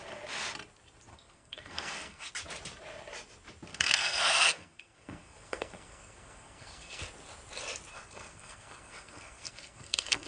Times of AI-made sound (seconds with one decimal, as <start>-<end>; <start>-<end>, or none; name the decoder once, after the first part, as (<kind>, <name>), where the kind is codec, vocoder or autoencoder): 1.1-2.3 (codec, SNAC); 3.7-7.0; 7.9-10.3

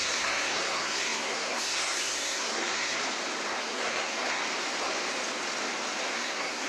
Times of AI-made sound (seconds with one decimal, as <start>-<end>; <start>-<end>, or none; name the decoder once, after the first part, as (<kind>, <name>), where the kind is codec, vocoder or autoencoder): 0.0-3.0 (codec, SNAC); 3.6-4.4; 6.1-6.7

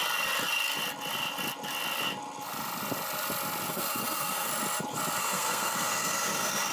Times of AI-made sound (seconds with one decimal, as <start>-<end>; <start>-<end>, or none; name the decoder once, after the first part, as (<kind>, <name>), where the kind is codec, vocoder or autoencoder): 3.7-4.5 (codec, SNAC); 5.2-6.7

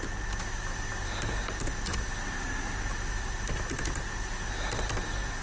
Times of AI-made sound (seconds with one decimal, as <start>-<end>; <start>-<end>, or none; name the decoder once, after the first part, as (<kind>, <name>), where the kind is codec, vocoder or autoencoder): none